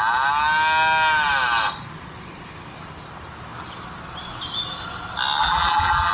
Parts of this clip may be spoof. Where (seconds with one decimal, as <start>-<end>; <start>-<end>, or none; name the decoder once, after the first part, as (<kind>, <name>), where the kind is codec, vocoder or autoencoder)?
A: 5.4-6.1 (vocoder, BigVGAN v2)